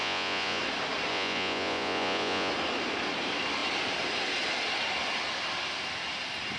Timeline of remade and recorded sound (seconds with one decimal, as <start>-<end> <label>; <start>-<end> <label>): 0.0-0.6 remade; 0.6-1.1 recorded; 1.1-2.5 remade; 2.5-6.6 recorded